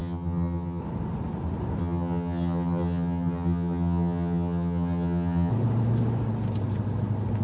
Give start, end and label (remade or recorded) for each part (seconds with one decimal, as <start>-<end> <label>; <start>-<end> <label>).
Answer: 0.0-0.8 remade; 0.8-1.8 recorded; 1.8-5.5 remade; 5.5-7.4 recorded

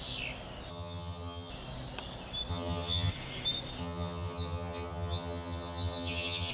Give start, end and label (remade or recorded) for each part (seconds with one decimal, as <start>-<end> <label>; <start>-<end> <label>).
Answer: 0.0-0.7 recorded; 0.7-1.5 remade; 1.5-2.5 recorded; 2.5-3.1 remade; 3.1-3.8 recorded; 3.8-6.5 remade

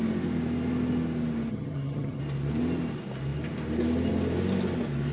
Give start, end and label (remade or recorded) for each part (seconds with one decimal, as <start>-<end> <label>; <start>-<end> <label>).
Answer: 0.0-1.5 recorded; 1.5-2.2 remade; 2.2-5.1 recorded

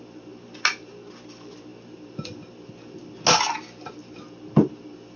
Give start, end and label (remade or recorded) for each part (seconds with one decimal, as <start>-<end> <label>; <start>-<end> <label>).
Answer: 0.0-5.2 recorded

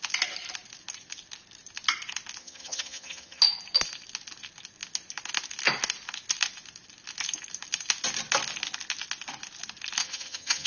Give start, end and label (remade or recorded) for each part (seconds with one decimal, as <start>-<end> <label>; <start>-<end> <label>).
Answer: 0.0-2.4 recorded; 2.4-3.4 remade; 3.4-10.0 recorded; 10.0-10.7 remade

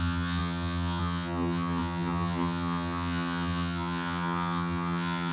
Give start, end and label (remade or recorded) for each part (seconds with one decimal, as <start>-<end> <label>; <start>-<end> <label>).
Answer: 0.0-5.3 remade

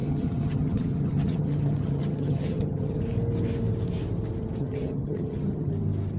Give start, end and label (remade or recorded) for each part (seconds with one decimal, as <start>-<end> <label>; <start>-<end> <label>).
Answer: 0.0-3.0 remade; 3.0-4.6 recorded; 4.6-5.7 remade; 5.7-6.2 recorded

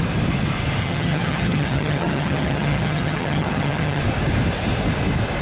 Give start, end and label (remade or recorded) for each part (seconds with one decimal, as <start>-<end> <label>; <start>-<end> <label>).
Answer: 0.0-0.8 recorded; 0.8-4.0 remade; 4.0-5.4 recorded